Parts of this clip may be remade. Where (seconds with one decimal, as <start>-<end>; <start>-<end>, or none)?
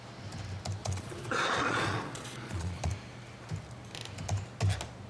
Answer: 0.8-2.9